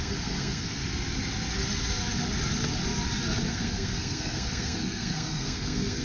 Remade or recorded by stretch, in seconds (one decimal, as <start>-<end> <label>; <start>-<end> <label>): 0.0-0.8 remade; 0.8-3.5 recorded; 3.5-6.0 remade